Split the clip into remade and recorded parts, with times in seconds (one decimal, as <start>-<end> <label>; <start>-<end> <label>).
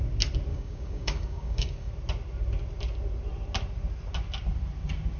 0.0-0.5 recorded; 0.5-1.9 remade; 1.9-5.2 recorded